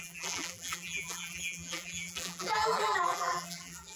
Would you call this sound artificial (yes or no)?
yes